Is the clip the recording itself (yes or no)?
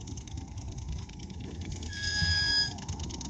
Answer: no